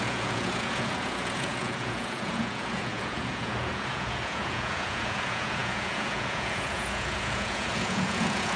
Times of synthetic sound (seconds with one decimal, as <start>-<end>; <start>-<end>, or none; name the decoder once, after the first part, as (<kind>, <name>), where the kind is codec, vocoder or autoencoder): 0.0-8.6 (vocoder, Vocos)